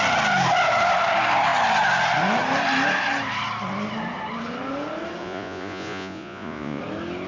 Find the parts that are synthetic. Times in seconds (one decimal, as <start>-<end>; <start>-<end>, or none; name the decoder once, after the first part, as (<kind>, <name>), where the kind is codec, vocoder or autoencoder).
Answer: 5.2-6.8 (vocoder, Vocos)